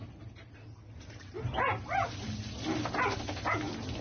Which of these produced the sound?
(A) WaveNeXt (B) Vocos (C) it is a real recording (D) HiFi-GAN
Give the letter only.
C